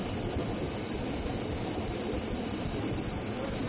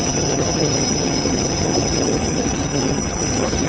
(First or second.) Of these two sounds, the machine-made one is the second